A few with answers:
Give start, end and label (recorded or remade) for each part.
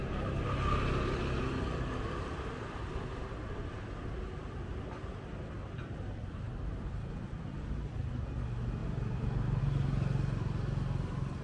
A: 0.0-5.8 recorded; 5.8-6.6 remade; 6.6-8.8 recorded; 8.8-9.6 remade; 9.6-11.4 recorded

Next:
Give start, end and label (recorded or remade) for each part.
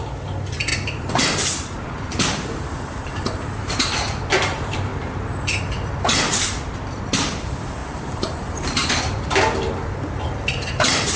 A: 0.0-0.7 remade; 0.7-1.2 recorded; 1.2-4.9 remade; 4.9-5.6 recorded; 5.6-11.2 remade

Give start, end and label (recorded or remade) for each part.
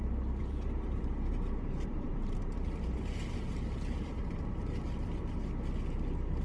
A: 0.0-0.4 recorded; 0.4-4.2 remade; 4.2-6.4 recorded